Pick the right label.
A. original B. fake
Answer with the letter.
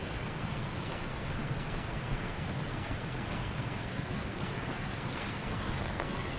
B